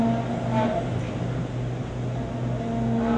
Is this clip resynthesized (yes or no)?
no